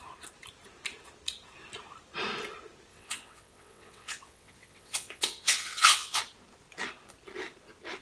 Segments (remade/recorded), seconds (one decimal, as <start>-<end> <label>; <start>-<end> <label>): 0.0-2.9 recorded; 2.9-6.2 remade; 6.2-8.0 recorded